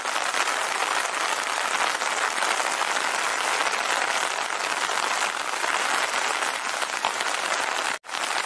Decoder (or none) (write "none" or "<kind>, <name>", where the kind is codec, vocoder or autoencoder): none